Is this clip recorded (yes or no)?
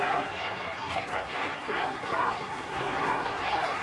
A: no